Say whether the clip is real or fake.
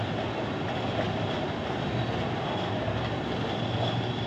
real